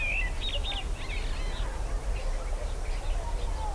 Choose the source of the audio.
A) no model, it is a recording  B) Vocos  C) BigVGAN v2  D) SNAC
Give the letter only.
A